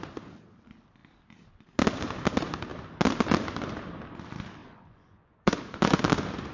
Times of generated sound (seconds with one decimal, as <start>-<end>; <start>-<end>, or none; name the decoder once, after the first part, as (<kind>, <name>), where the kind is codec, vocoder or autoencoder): 4.6-6.0 (vocoder, Vocos)